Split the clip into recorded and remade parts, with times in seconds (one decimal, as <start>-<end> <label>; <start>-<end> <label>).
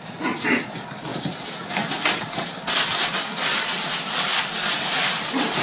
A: 0.0-1.1 remade; 1.1-3.6 recorded; 3.6-4.3 remade; 4.3-4.8 recorded; 4.8-5.6 remade